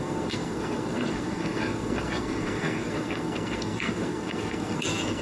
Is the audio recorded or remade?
remade